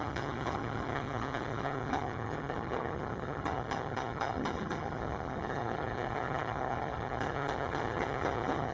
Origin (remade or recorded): remade